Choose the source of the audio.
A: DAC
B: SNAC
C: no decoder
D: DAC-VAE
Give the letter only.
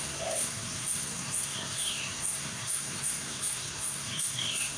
B